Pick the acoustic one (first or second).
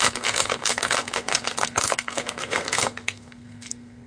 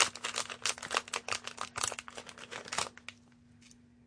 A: second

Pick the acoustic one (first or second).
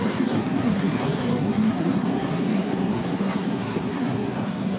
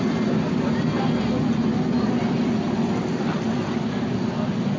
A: second